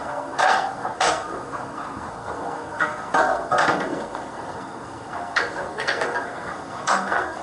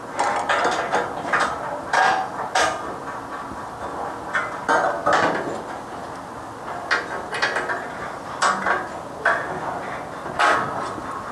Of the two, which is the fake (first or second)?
first